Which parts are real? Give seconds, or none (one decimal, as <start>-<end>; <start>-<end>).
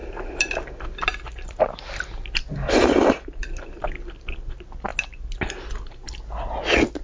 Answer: 0.0-7.0